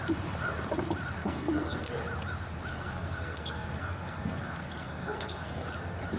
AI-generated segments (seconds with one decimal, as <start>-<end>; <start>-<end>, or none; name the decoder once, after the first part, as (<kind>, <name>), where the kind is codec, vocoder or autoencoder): 1.2-1.9 (codec, SNAC); 2.7-5.5